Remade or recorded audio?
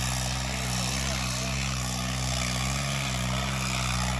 recorded